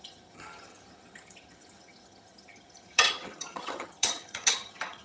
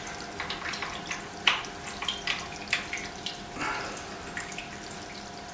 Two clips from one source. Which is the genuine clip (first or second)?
second